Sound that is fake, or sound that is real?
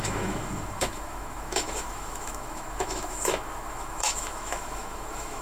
fake